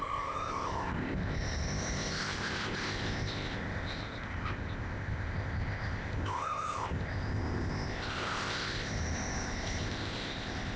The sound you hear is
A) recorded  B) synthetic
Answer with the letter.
B